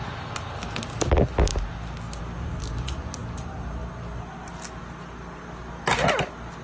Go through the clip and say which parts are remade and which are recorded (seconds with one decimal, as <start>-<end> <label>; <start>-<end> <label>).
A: 0.0-6.6 recorded